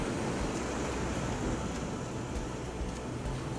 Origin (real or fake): real